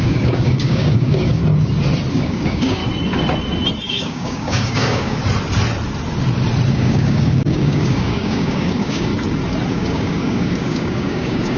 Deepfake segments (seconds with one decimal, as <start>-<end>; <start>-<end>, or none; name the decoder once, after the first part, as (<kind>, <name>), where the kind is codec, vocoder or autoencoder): 0.0-1.4 (codec, DAC); 2.1-2.8; 3.9-5.2; 6.7-9.1; 9.7-11.6